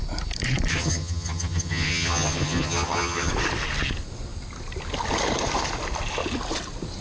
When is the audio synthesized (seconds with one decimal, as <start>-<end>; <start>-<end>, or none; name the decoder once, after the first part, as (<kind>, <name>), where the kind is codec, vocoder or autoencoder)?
0.7-3.3 (vocoder, HiFi-GAN)